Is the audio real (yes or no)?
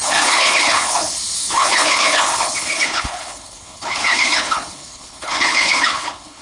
no